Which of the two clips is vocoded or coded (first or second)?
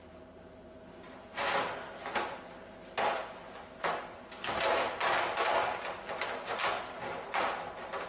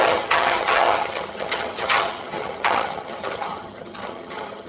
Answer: second